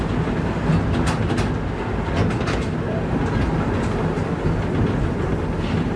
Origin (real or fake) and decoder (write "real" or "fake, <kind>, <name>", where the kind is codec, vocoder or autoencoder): real